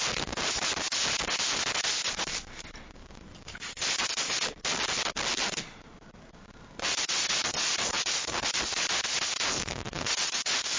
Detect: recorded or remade recorded